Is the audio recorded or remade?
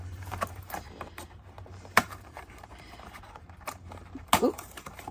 remade